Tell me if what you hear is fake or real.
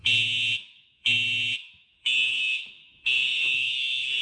fake